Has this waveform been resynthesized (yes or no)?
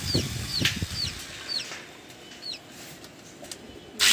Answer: no